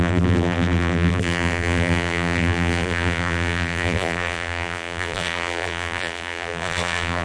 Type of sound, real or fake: fake